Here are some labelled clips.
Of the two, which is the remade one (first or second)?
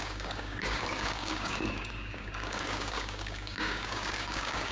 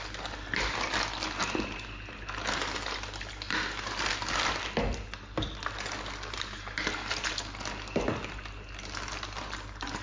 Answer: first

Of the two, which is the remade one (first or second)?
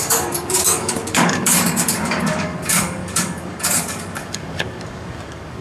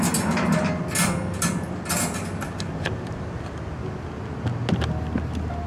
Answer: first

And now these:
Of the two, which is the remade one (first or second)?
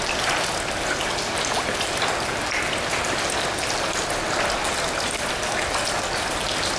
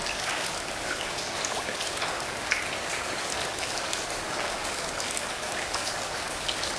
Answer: second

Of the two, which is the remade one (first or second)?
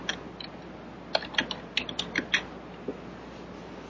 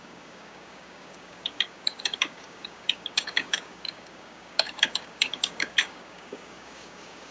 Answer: second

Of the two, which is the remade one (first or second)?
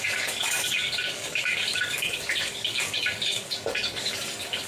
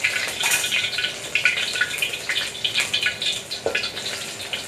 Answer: first